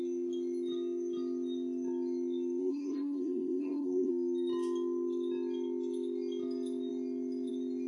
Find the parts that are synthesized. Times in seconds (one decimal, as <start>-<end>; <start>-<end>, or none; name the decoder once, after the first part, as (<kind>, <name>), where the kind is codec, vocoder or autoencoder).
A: 2.6-4.1 (codec, SNAC)